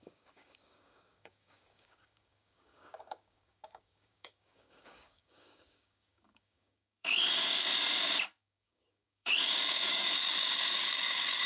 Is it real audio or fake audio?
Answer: fake